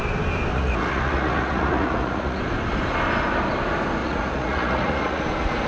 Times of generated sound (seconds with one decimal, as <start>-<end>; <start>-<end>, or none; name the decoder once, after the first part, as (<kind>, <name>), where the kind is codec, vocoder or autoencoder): 0.5-2.4 (vocoder, Vocos); 4.0-5.2